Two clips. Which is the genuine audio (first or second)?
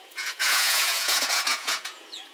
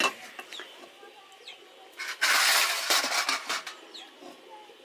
second